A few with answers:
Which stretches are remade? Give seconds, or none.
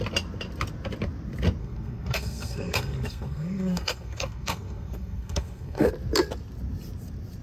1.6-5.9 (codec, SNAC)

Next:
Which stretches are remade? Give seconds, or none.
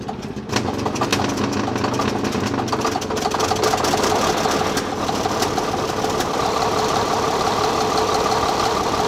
0.0-9.1 (vocoder, BigVGAN v2)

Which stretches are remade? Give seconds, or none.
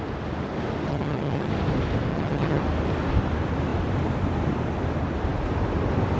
0.9-1.5 (vocoder, HiFi-GAN); 2.1-2.6